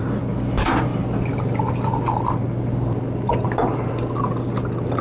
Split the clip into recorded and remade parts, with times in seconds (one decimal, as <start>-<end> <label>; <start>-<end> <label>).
0.0-5.0 recorded